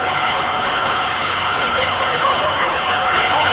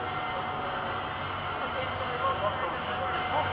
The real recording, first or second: second